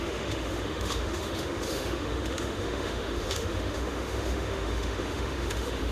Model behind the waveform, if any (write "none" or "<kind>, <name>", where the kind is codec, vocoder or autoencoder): autoencoder, DAC-VAE